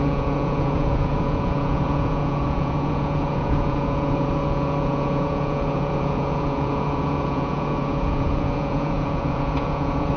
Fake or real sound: fake